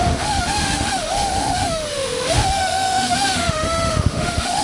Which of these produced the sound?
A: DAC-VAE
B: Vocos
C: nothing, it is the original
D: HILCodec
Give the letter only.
A